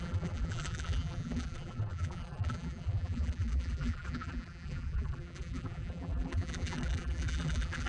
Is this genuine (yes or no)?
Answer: no